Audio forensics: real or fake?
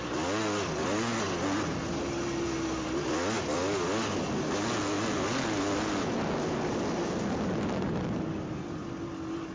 real